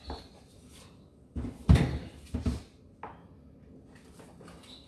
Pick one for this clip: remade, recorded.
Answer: recorded